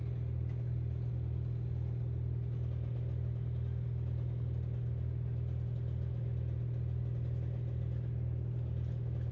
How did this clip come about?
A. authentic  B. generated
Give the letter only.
A